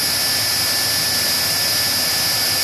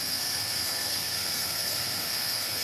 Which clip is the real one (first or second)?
first